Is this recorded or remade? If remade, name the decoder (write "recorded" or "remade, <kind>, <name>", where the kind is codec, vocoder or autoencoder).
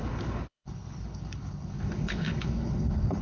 remade, codec, HILCodec